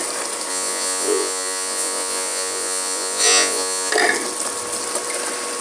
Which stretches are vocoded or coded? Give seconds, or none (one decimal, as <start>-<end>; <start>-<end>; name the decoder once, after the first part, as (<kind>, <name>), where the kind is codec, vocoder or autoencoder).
0.5-3.9 (vocoder, Vocos)